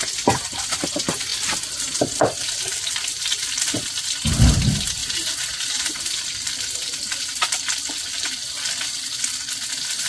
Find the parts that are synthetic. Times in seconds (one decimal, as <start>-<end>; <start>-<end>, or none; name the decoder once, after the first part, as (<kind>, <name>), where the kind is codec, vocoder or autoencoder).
1.3-4.6 (vocoder, BigVGAN v2); 5.0-9.5